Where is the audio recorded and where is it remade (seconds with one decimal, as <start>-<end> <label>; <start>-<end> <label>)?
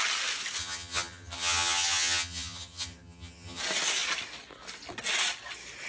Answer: 0.0-0.6 recorded; 0.6-3.6 remade; 3.6-5.9 recorded